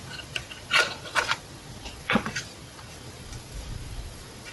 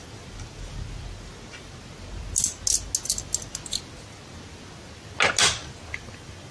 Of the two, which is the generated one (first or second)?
first